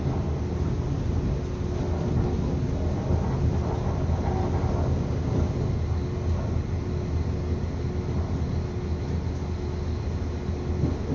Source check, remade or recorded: recorded